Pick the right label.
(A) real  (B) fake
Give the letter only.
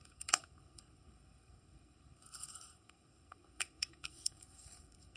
B